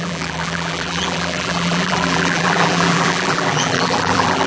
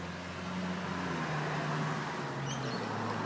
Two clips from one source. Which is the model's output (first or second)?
first